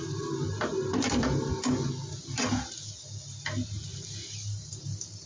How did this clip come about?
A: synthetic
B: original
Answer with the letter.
B